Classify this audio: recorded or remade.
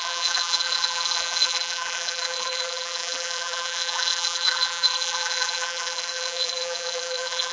remade